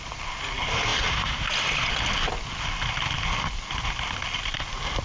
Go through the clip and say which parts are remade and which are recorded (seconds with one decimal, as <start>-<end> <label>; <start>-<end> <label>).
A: 0.0-5.0 recorded